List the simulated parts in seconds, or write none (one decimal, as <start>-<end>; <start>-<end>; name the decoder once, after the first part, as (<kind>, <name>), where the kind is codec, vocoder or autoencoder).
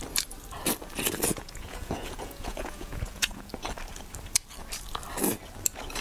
1.3-3.5 (vocoder, Vocos)